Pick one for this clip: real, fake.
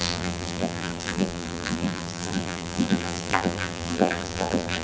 fake